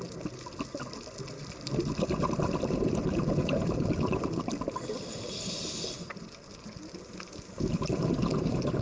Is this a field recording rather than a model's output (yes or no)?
yes